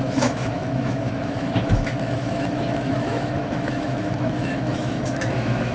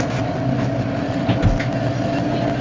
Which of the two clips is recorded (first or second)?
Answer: second